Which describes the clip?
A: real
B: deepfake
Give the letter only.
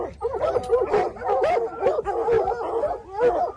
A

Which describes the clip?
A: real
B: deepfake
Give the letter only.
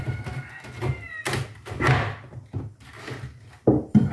A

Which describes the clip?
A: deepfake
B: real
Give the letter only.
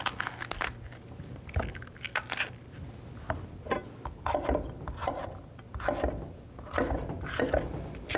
B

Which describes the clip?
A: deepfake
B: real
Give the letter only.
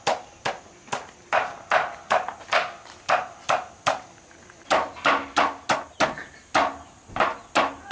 B